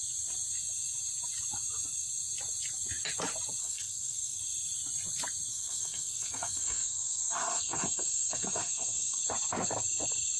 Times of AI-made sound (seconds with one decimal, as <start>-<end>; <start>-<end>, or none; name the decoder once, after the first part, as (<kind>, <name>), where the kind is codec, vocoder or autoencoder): 3.6-4.4 (codec, SNAC); 5.5-9.2